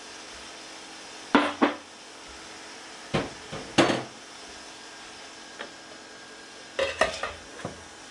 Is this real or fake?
real